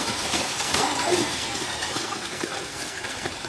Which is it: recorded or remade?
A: remade